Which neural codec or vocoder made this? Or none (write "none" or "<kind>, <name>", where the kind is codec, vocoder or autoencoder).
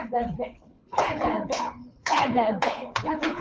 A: codec, HILCodec